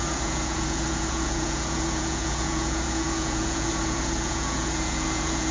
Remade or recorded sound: remade